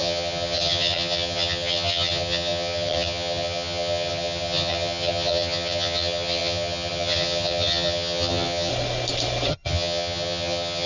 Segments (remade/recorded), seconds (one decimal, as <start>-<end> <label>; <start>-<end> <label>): 0.0-8.7 remade; 8.7-9.5 recorded; 9.5-10.9 remade